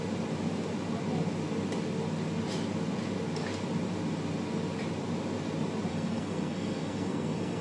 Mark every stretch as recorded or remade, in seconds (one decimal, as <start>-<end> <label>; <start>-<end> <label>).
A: 0.0-5.9 recorded; 5.9-7.6 remade